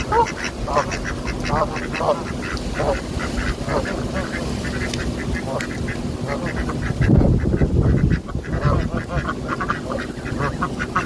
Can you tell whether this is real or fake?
real